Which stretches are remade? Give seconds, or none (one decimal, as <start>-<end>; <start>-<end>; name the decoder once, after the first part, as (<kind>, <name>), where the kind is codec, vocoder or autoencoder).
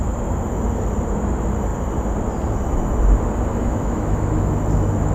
3.5-4.5 (autoencoder, DAC-VAE)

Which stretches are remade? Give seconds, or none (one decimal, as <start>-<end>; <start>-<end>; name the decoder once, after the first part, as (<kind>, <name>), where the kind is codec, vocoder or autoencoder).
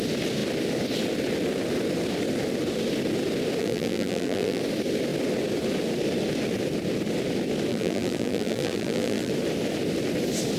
3.6-4.6 (vocoder, BigVGAN v2); 7.7-9.3